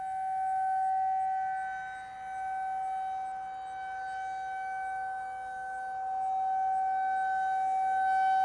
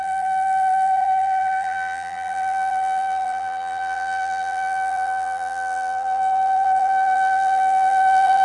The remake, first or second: second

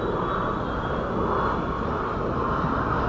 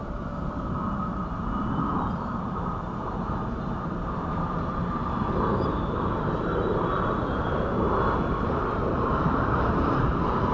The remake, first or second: second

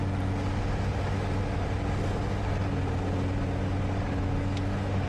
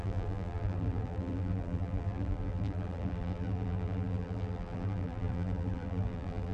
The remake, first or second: second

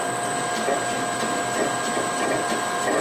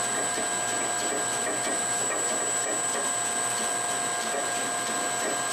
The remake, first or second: first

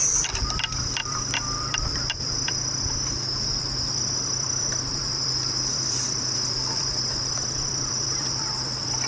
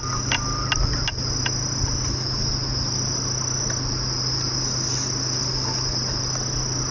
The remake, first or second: first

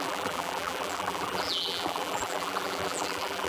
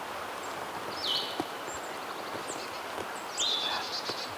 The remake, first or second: first